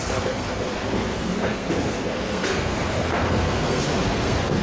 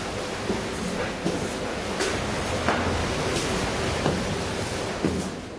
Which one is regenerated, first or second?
first